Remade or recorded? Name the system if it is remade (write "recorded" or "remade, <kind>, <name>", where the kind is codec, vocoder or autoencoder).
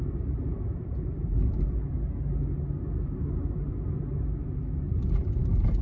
recorded